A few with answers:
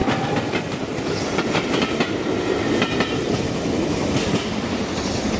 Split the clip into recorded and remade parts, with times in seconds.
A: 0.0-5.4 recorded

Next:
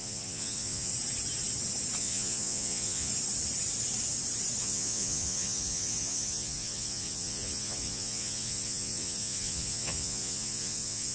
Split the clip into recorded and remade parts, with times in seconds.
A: 0.0-0.9 remade; 0.9-2.0 recorded; 2.0-3.1 remade; 3.1-4.6 recorded; 4.6-11.1 remade